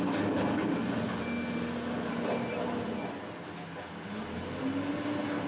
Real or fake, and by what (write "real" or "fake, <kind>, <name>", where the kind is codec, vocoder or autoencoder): real